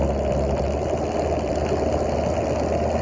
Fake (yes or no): no